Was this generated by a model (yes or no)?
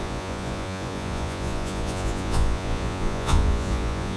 yes